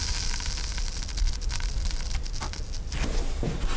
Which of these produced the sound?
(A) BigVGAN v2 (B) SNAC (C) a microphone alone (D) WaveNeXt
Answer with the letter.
C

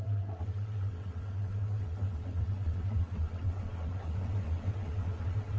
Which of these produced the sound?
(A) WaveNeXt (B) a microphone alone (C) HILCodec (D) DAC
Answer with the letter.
A